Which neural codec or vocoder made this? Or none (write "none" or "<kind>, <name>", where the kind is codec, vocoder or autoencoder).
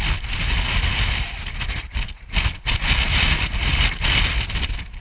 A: none